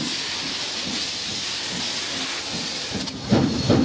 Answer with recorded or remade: recorded